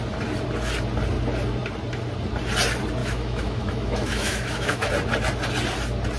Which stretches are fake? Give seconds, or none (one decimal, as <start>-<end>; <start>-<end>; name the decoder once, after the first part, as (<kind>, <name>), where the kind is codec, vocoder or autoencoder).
3.0-4.9 (autoencoder, DAC-VAE)